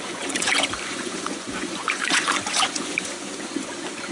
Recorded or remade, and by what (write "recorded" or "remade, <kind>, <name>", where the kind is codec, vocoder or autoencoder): remade, vocoder, Vocos